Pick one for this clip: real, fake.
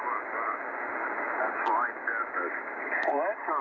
real